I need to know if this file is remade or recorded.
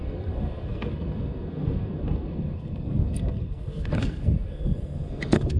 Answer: remade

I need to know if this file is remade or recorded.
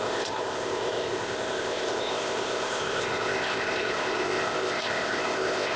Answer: remade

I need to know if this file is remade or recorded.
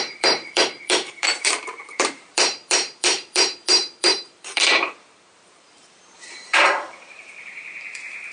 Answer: remade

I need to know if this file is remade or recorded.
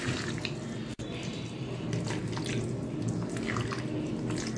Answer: recorded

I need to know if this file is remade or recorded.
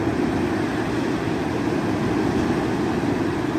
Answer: recorded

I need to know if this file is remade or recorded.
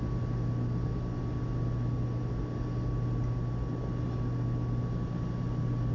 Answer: recorded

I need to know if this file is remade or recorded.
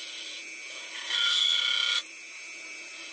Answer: recorded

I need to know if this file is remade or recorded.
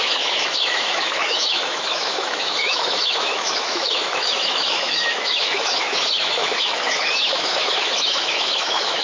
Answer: remade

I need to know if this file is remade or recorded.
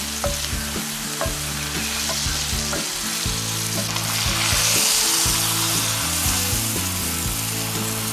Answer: recorded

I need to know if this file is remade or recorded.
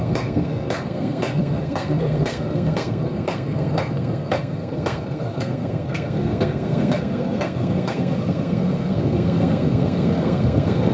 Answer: remade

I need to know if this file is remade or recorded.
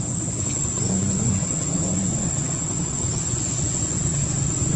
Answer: remade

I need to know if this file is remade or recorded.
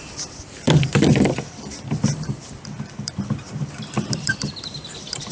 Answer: remade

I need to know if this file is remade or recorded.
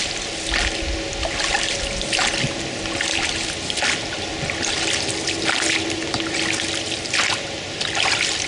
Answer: recorded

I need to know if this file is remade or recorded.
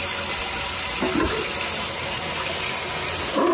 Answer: recorded